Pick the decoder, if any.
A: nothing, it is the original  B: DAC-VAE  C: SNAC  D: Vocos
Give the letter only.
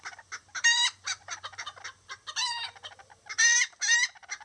A